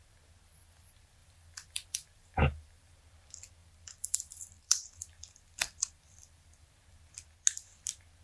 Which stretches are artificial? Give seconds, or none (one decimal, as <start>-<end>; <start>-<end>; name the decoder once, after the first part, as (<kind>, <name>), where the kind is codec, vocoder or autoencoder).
1.2-3.0 (vocoder, BigVGAN v2); 3.6-6.7